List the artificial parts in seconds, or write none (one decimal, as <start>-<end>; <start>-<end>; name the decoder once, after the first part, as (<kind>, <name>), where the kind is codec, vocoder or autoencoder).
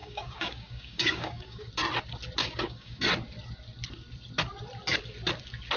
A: 0.0-1.7 (codec, DAC); 2.4-3.0